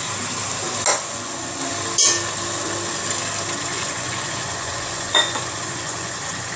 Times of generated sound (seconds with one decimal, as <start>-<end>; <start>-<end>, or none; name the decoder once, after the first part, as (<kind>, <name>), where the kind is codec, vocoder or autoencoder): 0.9-1.6 (vocoder, Vocos); 3.7-6.6